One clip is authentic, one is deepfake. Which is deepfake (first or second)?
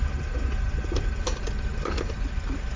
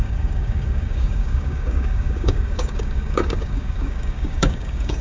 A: second